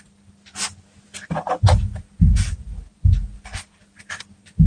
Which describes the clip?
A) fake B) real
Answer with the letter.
B